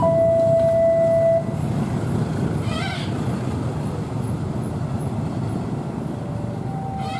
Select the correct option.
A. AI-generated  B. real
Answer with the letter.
B